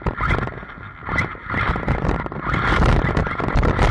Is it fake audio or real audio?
real